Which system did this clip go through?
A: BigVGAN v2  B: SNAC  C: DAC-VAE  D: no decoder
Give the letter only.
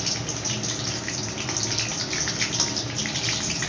D